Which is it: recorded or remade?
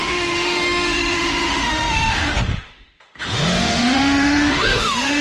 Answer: remade